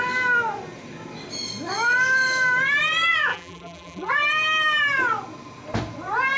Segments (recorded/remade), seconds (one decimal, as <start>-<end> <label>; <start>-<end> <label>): 0.0-3.3 recorded; 3.3-4.1 remade; 4.1-6.4 recorded